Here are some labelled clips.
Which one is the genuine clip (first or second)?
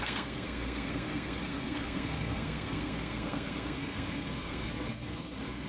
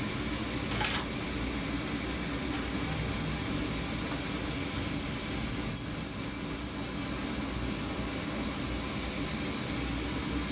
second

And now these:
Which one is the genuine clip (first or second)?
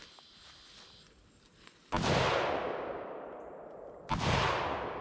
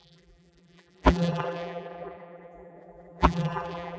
first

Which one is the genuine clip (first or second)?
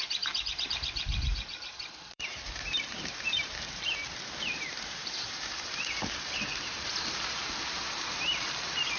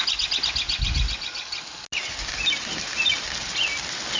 second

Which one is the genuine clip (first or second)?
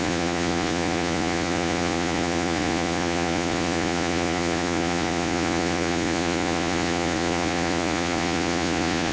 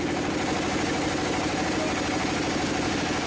second